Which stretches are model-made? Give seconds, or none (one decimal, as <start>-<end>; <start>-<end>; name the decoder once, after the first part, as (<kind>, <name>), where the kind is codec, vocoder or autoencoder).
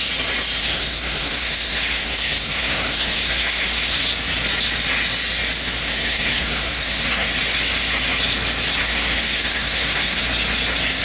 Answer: 0.6-4.0 (codec, SNAC); 5.8-7.3; 8.8-10.2